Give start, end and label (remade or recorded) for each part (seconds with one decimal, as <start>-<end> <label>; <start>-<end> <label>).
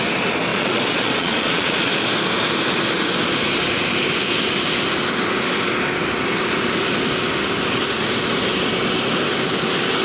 0.0-0.5 recorded; 0.5-1.9 remade; 1.9-10.0 recorded